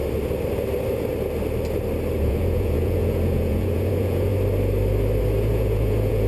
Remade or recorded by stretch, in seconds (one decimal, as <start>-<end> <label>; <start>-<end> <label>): 0.0-2.2 recorded; 2.2-4.3 remade; 4.3-5.5 recorded; 5.5-6.3 remade